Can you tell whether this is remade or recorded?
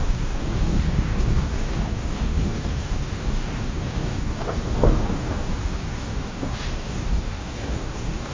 remade